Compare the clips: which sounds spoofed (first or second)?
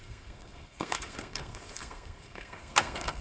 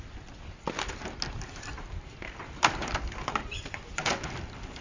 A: first